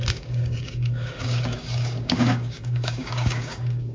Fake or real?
fake